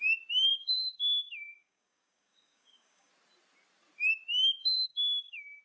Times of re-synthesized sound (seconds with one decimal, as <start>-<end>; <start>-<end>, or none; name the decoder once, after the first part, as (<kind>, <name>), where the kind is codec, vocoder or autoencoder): 0.5-3.1 (codec, DAC); 4.6-5.6